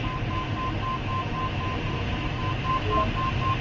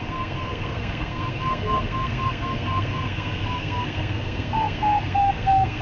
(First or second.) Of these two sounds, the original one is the first